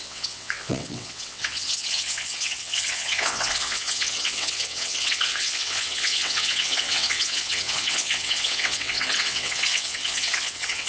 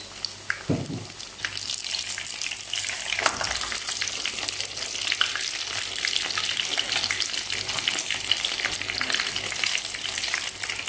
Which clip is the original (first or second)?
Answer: second